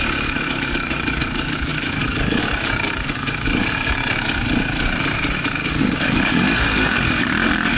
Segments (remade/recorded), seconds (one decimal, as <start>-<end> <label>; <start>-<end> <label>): 0.0-4.0 remade; 4.0-5.7 recorded; 5.7-7.8 remade